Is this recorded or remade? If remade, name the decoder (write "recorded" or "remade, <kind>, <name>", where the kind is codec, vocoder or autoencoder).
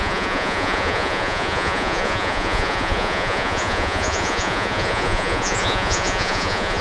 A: remade, vocoder, Vocos